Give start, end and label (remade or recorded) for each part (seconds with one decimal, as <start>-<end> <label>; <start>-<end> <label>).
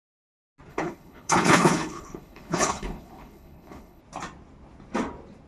0.0-0.7 recorded; 0.7-4.0 remade; 4.0-5.5 recorded